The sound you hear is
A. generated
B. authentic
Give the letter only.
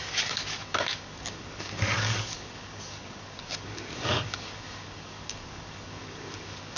A